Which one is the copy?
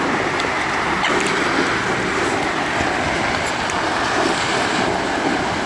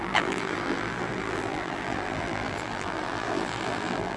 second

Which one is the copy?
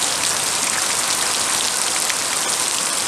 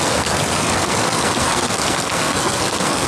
second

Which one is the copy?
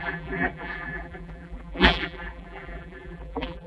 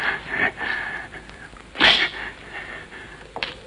first